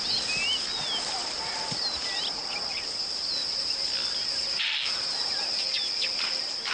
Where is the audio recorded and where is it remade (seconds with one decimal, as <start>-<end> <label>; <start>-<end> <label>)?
0.0-6.7 recorded